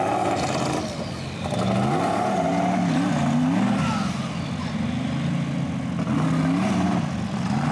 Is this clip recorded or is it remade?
recorded